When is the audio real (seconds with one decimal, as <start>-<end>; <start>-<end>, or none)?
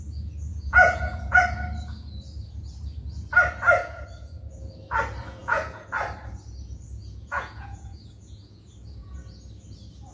0.0-0.5; 1.4-3.8; 4.5-5.4; 5.9-7.0; 9.2-10.1